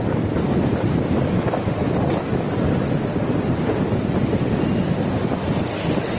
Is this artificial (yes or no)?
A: no